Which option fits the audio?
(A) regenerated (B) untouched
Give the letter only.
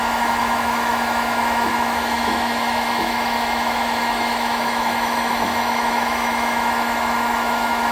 A